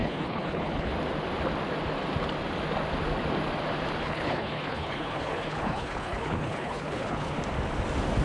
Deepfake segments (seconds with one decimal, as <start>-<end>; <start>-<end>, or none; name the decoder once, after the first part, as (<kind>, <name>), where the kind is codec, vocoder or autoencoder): 0.0-0.9 (codec, HILCodec); 4.0-7.3